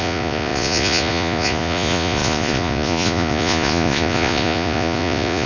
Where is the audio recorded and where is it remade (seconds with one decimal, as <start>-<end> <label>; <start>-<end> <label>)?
0.0-5.5 remade